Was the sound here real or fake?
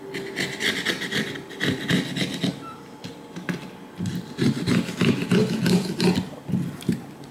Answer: real